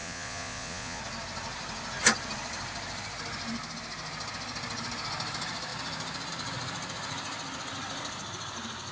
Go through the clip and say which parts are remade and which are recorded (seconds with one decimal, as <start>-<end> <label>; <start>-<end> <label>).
0.0-1.0 remade; 1.0-8.9 recorded